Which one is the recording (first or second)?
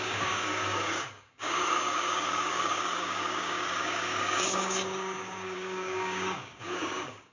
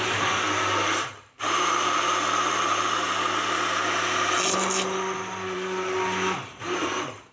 second